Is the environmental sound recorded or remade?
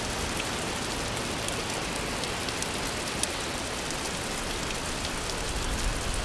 recorded